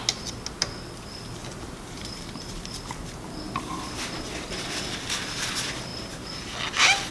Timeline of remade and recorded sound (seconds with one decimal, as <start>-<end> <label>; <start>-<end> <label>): 0.0-1.4 recorded; 1.4-2.3 remade; 2.3-5.9 recorded; 5.9-6.5 remade; 6.5-7.1 recorded